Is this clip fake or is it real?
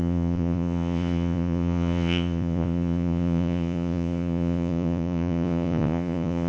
fake